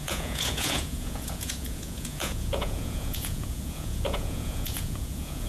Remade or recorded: remade